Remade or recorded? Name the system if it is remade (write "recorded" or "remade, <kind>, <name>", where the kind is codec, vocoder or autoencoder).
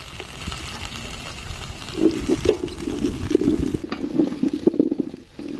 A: recorded